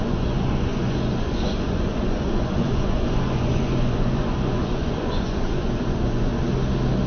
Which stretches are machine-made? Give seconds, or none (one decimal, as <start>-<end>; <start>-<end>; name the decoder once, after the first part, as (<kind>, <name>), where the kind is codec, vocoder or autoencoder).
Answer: 0.0-6.3 (vocoder, Vocos)